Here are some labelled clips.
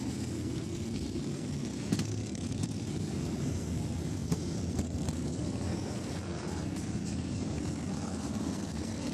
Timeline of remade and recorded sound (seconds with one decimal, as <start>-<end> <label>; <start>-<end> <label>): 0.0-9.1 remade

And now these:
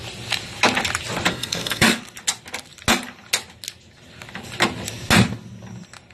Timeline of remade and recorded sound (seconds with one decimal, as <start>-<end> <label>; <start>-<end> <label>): 0.0-1.3 recorded; 1.3-2.0 remade; 2.0-6.1 recorded

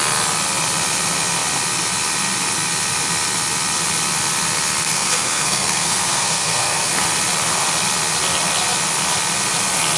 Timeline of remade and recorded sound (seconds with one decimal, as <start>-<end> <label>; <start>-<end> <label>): 0.0-4.9 recorded; 4.9-6.9 remade; 6.9-10.0 recorded